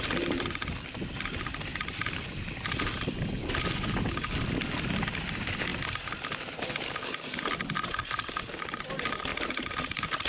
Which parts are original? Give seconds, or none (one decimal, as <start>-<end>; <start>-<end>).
0.0-10.3